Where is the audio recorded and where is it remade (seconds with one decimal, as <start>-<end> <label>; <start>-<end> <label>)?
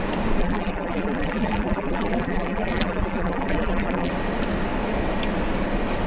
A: 0.0-0.4 recorded; 0.4-4.1 remade; 4.1-6.1 recorded